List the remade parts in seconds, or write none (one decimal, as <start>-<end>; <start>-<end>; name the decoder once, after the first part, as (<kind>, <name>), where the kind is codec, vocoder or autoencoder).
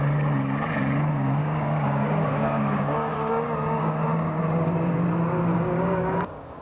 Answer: 1.4-4.4 (codec, DAC); 5.5-6.6